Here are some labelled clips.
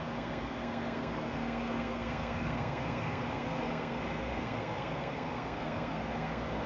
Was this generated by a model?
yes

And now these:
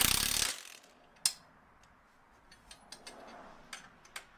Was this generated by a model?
no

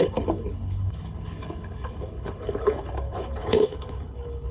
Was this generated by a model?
yes